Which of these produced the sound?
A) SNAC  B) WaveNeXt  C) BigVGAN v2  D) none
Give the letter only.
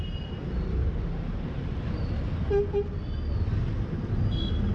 D